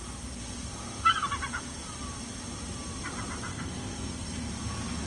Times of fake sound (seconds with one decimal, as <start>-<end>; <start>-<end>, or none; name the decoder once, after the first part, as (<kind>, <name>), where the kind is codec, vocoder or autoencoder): 3.5-4.5 (codec, SNAC)